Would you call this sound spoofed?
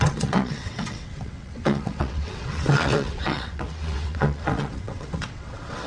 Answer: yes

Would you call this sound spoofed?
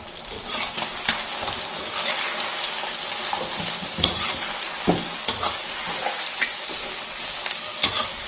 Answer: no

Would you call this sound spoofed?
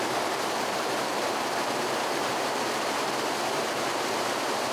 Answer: yes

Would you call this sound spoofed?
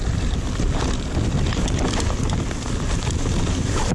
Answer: no